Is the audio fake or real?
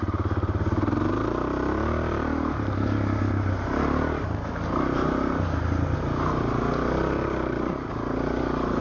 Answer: real